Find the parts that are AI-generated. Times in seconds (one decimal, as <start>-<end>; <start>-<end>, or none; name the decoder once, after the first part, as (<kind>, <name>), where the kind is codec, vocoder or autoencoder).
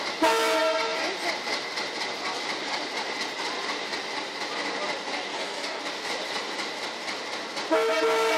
5.3-5.8 (codec, DAC)